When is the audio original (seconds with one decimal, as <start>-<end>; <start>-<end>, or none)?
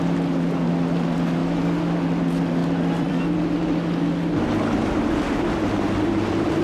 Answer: 0.0-2.6; 3.2-6.6